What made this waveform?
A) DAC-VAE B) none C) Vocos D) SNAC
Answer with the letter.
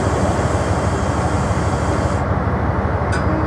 B